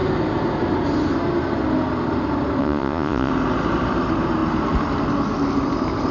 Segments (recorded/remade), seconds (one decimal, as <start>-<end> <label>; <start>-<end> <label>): 0.0-2.6 recorded; 2.6-3.3 remade; 3.3-6.1 recorded